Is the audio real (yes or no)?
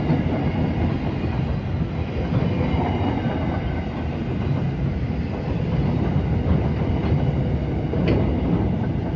yes